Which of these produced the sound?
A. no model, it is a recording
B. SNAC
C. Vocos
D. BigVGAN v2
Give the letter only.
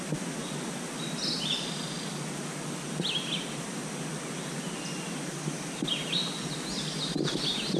A